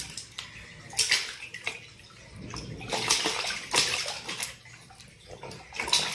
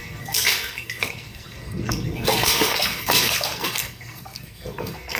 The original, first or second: first